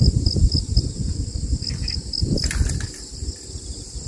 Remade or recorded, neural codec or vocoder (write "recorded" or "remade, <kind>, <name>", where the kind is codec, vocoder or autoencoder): recorded